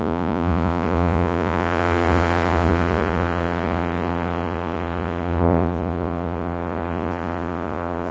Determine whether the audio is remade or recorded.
remade